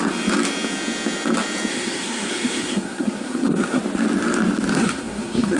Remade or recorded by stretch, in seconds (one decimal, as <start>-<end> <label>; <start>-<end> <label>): 0.0-1.7 recorded; 1.7-3.8 remade; 3.8-4.7 recorded; 4.7-5.6 remade